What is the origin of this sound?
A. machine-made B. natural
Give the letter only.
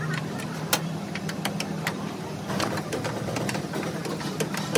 B